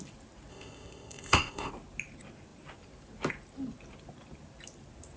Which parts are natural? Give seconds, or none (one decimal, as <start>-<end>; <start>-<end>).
0.0-0.5; 1.7-5.2